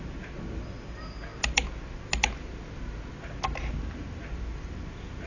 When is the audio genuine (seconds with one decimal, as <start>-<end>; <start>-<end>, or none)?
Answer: 0.0-5.3